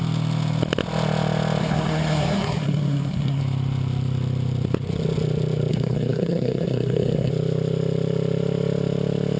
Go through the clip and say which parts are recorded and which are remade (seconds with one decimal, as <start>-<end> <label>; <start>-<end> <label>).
0.0-1.6 recorded; 1.6-3.4 remade; 3.4-5.7 recorded; 5.7-7.3 remade; 7.3-9.4 recorded